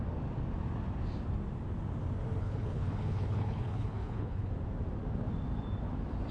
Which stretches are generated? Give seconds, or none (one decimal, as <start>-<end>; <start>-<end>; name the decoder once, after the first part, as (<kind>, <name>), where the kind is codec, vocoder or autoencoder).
2.4-4.5 (codec, HILCodec)